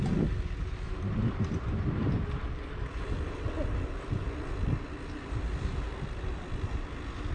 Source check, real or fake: real